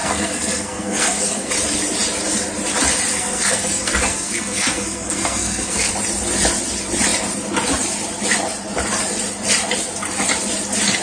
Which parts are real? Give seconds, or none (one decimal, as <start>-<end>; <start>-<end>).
1.5-3.1; 5.9-11.0